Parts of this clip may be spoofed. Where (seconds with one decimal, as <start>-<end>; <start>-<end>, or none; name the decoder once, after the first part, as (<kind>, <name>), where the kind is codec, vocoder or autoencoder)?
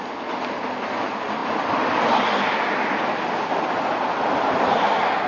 none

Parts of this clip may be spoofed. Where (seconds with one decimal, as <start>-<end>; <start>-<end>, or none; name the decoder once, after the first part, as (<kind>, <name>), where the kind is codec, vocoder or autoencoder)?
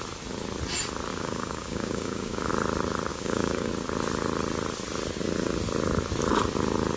1.1-2.5 (codec, DAC); 3.1-3.7